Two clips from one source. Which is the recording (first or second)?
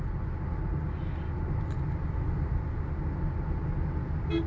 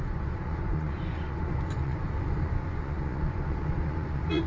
first